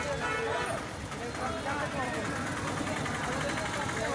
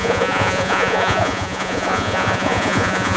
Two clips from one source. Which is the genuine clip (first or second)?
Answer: first